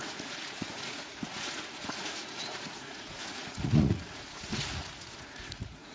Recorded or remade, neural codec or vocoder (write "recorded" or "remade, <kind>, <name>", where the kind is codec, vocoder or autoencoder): remade, vocoder, Vocos